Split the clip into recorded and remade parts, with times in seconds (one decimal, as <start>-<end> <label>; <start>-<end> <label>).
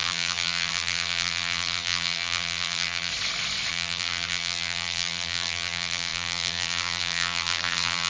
0.0-3.1 remade; 3.1-3.7 recorded; 3.7-8.1 remade